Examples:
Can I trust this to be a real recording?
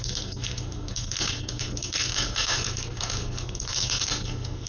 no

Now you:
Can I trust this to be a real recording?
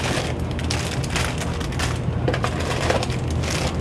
yes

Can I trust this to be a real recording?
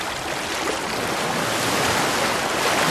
yes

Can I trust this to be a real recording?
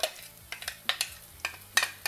yes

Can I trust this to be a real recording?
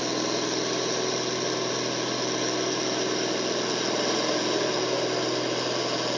yes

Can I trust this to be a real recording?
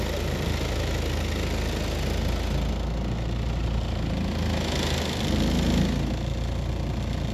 yes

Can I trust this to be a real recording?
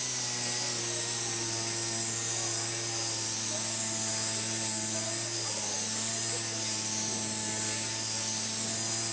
yes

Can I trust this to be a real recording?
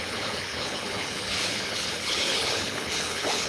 no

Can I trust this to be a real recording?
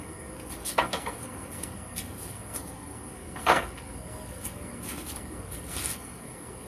no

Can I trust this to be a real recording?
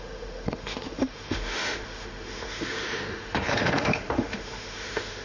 no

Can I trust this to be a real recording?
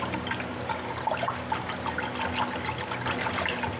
yes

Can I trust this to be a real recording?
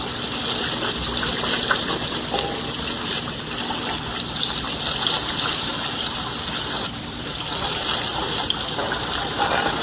yes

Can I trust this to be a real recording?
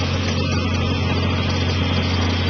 yes